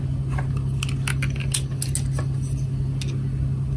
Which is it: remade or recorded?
recorded